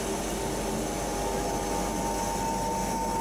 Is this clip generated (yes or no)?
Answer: no